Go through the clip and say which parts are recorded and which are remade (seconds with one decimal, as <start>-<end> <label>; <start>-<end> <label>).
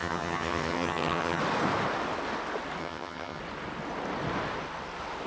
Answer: 0.0-1.4 remade; 1.4-2.8 recorded; 2.8-3.4 remade; 3.4-5.3 recorded